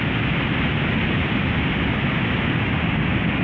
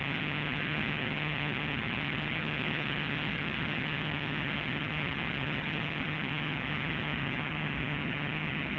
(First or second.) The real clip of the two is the first